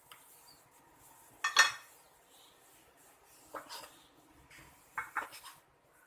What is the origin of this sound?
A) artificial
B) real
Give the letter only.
B